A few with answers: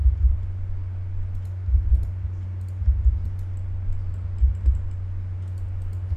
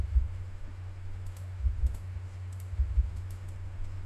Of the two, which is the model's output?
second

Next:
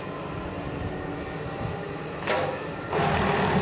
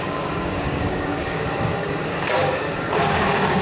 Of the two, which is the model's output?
second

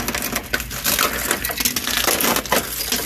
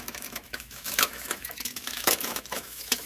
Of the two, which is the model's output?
second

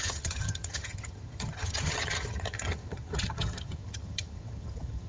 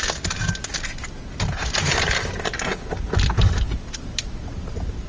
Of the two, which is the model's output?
first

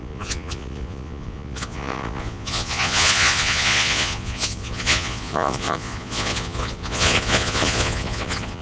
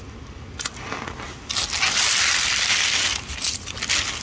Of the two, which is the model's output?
first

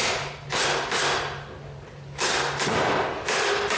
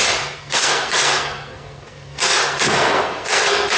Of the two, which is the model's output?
second